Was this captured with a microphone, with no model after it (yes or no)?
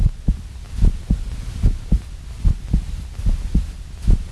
yes